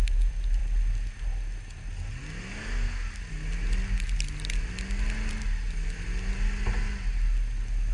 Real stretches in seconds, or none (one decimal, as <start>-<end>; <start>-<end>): 0.0-7.9